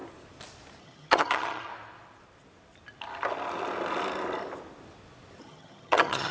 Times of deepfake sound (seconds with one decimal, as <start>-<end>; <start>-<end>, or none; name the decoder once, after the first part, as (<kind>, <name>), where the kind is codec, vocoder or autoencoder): 0.8-1.7 (vocoder, HiFi-GAN); 5.4-6.3